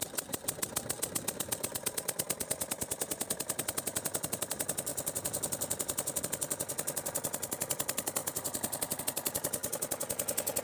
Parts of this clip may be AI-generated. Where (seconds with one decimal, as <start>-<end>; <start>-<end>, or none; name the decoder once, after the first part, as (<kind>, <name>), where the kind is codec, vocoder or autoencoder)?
4.9-6.2 (vocoder, BigVGAN v2); 8.2-9.0